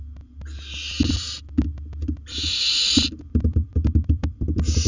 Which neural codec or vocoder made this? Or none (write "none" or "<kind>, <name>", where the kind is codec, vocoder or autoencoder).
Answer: none